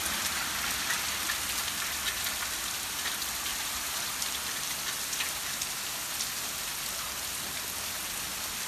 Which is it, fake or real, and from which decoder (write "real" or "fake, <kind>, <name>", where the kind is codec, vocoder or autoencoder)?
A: real